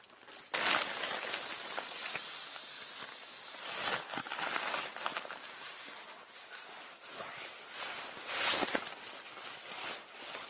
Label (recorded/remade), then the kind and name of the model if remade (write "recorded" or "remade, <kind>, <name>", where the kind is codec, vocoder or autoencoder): recorded